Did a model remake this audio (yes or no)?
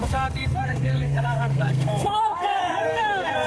yes